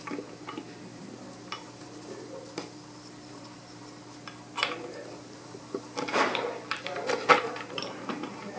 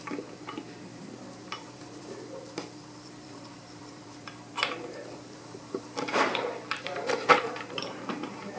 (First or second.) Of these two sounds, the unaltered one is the first